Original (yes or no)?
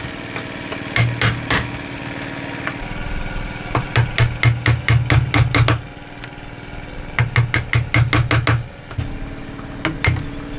yes